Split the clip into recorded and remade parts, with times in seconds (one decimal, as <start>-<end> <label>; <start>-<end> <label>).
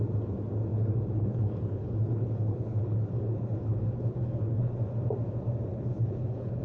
0.0-0.7 recorded; 0.7-4.7 remade; 4.7-5.7 recorded; 5.7-6.6 remade